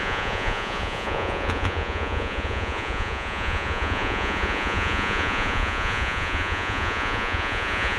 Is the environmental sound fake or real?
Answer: fake